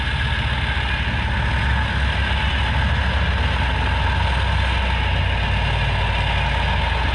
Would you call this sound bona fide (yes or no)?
yes